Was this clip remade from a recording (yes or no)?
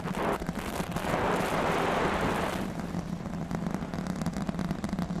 no